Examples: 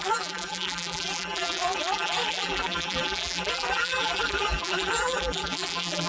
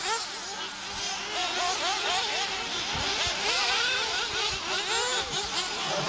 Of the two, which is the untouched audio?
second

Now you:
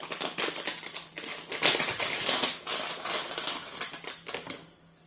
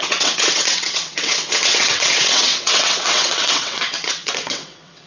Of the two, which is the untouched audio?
first